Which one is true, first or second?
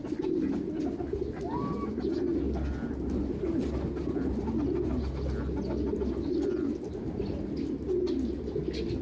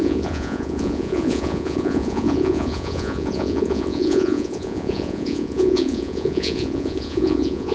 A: first